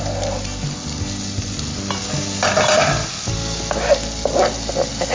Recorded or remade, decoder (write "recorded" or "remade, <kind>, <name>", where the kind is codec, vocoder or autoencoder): recorded